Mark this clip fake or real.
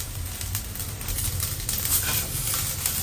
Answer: real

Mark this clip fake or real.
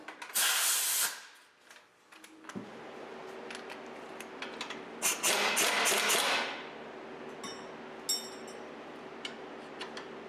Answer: real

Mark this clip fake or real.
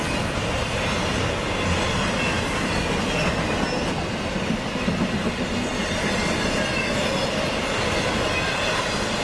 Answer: real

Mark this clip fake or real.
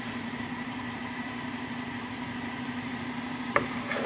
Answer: fake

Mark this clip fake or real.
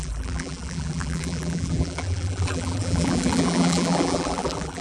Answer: fake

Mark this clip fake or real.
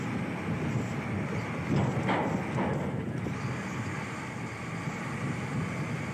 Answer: real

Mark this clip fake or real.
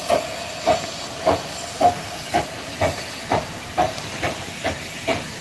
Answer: fake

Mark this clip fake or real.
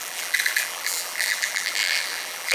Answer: fake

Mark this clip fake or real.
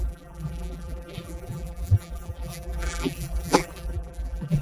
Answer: fake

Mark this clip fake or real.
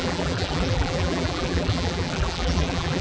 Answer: fake